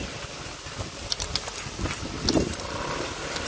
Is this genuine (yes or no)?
yes